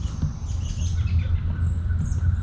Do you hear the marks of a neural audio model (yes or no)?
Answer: no